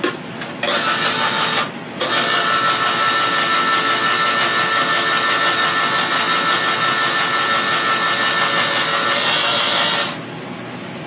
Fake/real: real